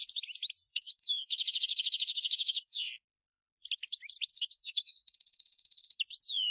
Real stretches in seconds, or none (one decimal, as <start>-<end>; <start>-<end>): 0.0-0.7; 2.9-4.3; 6.0-6.5